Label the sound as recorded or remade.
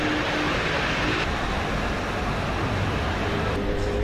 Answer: recorded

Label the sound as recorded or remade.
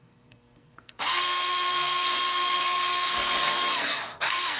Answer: remade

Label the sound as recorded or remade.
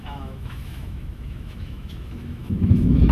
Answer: remade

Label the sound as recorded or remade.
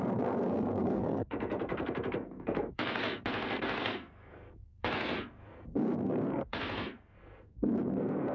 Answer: remade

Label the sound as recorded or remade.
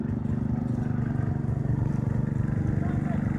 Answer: recorded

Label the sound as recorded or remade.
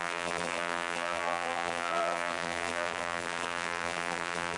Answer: remade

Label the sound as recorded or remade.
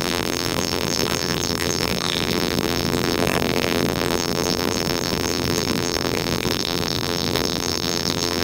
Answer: remade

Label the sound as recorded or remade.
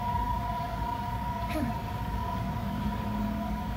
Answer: remade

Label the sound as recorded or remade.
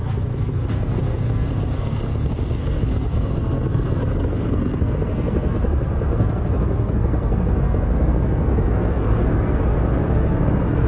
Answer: remade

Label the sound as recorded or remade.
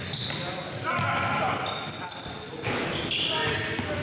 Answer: recorded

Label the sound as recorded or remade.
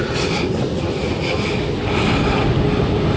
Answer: recorded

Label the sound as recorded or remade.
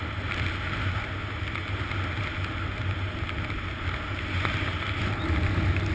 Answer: recorded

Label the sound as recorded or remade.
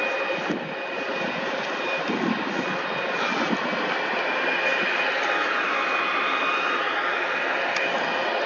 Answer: recorded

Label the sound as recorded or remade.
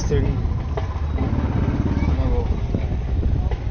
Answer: recorded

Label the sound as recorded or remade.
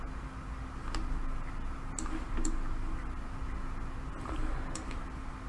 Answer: recorded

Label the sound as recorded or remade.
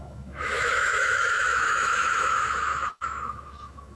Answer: remade